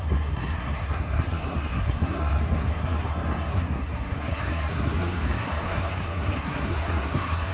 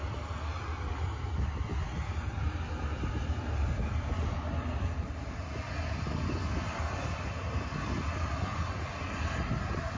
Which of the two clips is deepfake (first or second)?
first